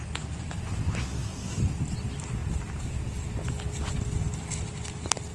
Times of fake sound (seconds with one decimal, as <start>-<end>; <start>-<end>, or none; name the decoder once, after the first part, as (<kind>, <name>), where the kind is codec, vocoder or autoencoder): 1.0-1.6 (codec, SNAC)